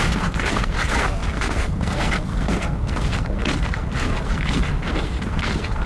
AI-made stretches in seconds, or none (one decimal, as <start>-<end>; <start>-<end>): 0.0-5.9